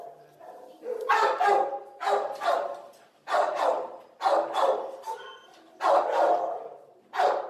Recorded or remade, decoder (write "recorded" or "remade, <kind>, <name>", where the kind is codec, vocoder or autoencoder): recorded